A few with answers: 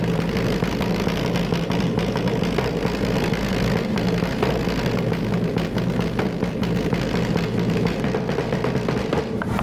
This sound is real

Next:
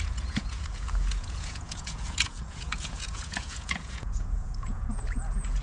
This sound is fake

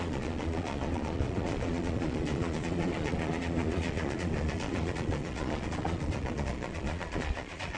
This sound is fake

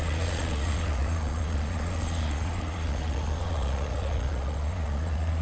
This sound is fake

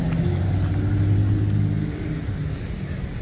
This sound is real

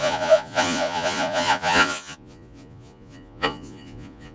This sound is fake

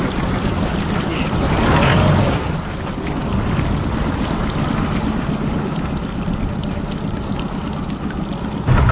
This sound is real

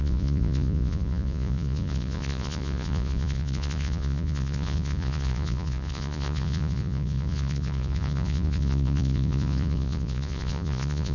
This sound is fake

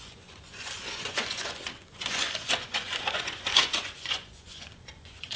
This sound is fake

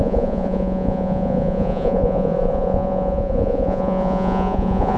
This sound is fake